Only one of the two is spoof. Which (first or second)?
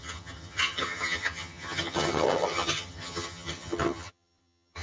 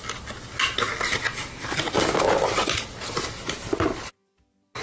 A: first